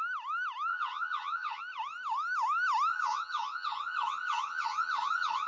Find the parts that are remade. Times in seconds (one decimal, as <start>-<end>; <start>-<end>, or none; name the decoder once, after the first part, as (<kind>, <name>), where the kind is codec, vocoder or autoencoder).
0.7-1.6 (vocoder, HiFi-GAN); 2.9-5.5